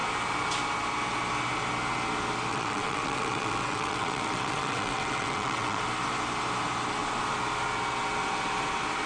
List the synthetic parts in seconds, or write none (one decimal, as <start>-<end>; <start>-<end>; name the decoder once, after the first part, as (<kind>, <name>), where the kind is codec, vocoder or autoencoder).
2.5-5.8 (vocoder, WaveNeXt)